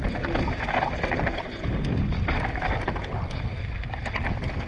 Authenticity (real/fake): real